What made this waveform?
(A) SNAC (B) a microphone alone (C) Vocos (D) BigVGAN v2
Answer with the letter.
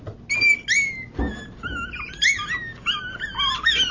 B